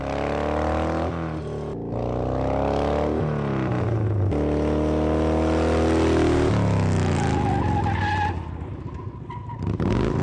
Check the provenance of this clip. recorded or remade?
recorded